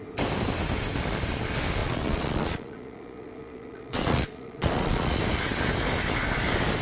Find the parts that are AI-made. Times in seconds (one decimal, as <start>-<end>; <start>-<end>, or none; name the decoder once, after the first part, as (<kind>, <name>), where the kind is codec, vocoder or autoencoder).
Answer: 1.8-5.2 (vocoder, Vocos)